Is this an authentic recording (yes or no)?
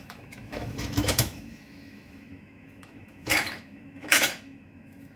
no